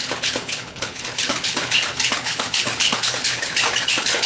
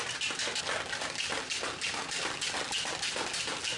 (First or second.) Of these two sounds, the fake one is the first